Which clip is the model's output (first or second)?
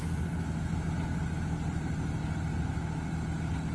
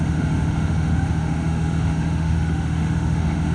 second